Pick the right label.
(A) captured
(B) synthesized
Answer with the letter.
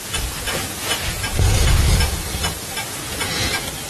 B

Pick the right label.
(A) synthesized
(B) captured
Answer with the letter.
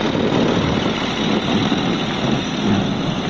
B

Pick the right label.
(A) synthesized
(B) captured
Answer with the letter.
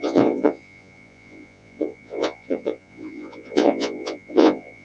A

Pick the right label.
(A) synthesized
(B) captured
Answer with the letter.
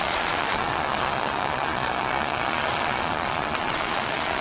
A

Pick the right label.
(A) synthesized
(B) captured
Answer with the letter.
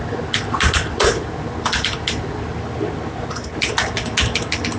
B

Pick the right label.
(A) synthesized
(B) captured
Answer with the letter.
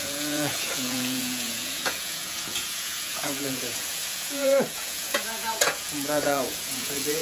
A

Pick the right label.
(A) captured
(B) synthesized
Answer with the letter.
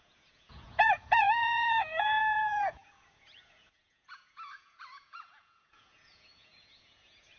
B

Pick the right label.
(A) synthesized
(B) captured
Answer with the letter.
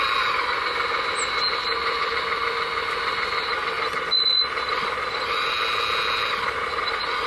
B